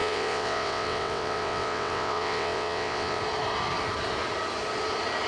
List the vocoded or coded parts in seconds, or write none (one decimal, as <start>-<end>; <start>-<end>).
0.0-3.2